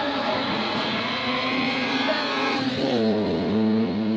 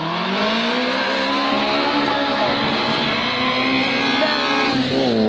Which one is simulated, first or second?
first